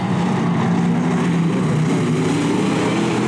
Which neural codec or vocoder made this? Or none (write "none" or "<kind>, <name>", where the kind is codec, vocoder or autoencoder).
none